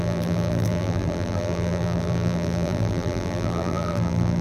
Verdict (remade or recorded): remade